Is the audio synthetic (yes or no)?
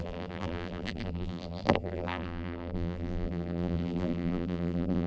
yes